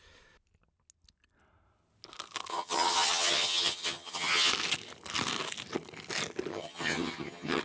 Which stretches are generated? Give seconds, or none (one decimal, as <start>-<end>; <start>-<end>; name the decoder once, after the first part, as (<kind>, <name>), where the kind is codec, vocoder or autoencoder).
2.5-4.5 (vocoder, HiFi-GAN); 6.5-7.6